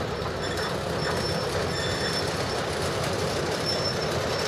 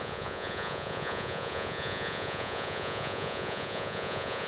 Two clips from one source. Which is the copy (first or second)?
second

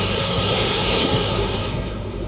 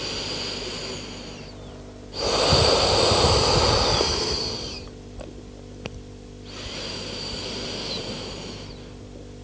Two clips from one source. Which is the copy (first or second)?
first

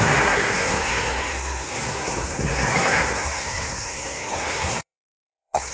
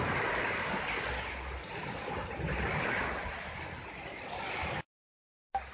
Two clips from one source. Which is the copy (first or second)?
first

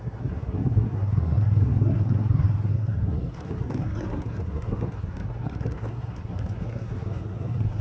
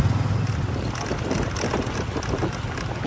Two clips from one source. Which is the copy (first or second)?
first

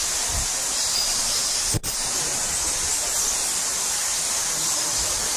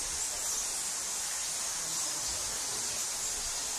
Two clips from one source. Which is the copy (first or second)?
first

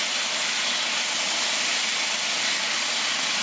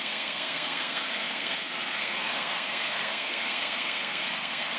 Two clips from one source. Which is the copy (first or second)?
second